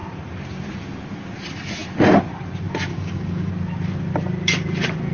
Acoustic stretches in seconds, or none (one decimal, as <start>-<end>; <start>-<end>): 0.0-2.9; 3.5-5.1